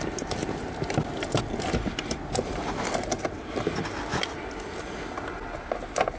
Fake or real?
real